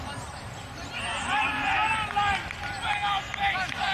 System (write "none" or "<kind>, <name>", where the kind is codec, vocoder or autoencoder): none